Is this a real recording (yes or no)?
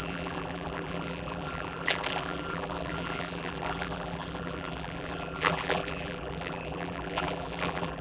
no